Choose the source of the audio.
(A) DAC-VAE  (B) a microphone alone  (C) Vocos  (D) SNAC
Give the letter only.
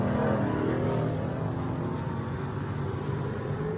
B